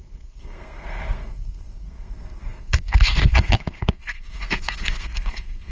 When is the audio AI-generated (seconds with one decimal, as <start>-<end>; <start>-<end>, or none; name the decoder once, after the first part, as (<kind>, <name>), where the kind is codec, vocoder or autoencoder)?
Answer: 0.0-5.7 (codec, SNAC)